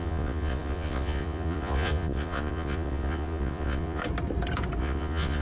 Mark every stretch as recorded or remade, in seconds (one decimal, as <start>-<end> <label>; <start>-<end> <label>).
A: 0.0-4.0 remade; 4.0-4.8 recorded; 4.8-5.4 remade